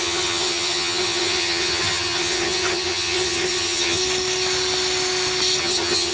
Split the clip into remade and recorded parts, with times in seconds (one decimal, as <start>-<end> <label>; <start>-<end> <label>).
0.0-4.0 remade; 4.0-5.6 recorded; 5.6-6.1 remade